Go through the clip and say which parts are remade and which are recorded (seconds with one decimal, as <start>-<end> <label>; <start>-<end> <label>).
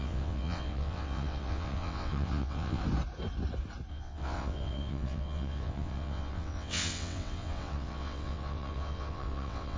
0.0-2.8 remade; 2.8-3.9 recorded; 3.9-9.8 remade